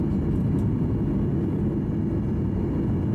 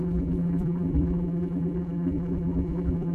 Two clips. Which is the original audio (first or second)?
first